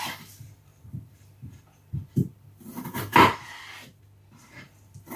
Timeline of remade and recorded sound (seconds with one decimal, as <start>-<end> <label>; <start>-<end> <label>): 0.0-5.2 remade